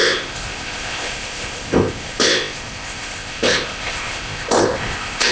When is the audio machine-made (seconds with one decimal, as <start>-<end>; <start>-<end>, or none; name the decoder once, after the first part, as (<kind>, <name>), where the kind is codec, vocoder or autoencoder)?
0.0-5.3 (codec, ZipCodec)